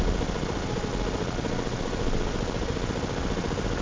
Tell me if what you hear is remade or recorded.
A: recorded